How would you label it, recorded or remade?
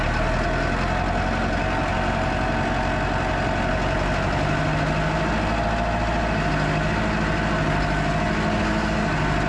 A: recorded